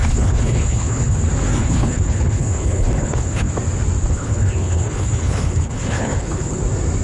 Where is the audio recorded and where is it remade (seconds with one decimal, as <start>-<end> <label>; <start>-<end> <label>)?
0.0-1.2 remade; 1.2-1.6 recorded; 1.6-3.5 remade; 3.5-4.1 recorded; 4.1-6.6 remade; 6.6-7.0 recorded